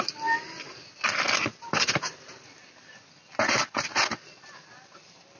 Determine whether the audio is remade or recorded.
recorded